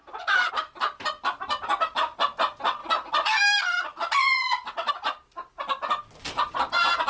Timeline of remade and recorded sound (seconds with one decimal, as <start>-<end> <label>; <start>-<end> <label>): 0.0-2.8 recorded; 2.8-3.3 remade; 3.3-4.2 recorded; 4.2-4.9 remade; 4.9-7.1 recorded